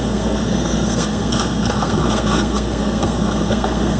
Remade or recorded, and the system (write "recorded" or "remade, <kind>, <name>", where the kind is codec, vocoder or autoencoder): remade, codec, SNAC